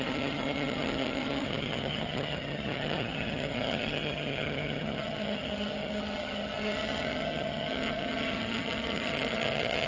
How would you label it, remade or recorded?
remade